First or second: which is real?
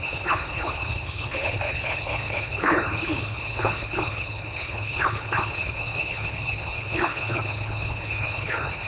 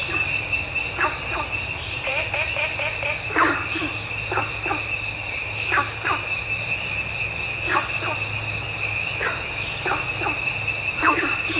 second